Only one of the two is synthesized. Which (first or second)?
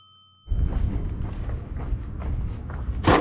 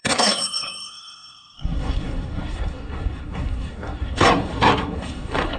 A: second